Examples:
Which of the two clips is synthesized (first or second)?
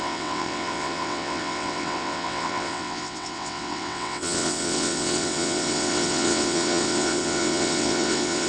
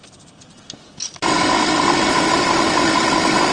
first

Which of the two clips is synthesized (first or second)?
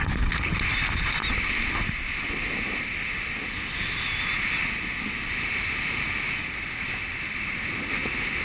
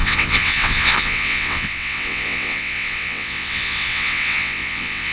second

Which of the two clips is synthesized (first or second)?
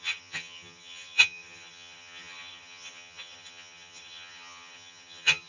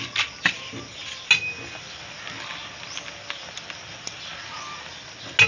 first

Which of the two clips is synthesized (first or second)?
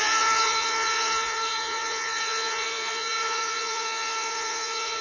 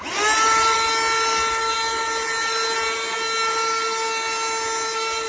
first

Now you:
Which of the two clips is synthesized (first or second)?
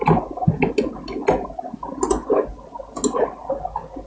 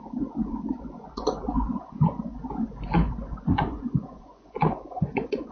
second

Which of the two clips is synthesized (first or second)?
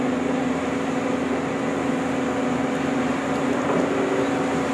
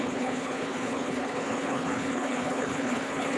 second